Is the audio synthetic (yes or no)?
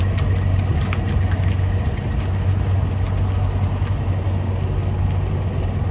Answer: no